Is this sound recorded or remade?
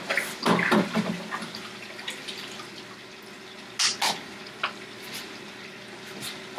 recorded